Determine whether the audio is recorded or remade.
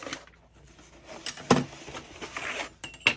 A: recorded